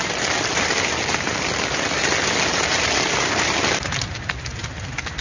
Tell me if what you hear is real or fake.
real